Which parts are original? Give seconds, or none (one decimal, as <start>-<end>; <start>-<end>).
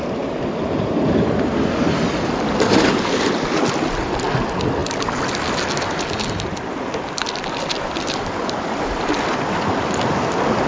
0.0-10.7